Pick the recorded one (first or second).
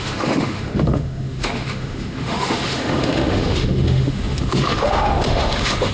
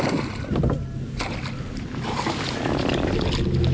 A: second